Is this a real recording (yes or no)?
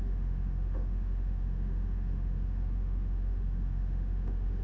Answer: no